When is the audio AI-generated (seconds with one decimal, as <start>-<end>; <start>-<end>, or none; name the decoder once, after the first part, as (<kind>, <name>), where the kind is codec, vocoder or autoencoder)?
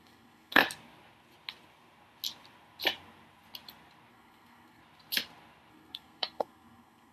0.0-0.6 (codec, SNAC); 4.1-4.8; 5.7-7.1